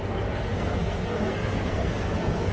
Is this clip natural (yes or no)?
no